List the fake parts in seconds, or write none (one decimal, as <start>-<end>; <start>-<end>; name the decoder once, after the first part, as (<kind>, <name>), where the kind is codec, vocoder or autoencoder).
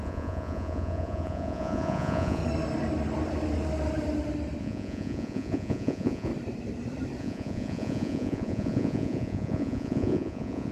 0.0-2.4 (vocoder, Vocos); 4.6-6.3; 7.2-10.7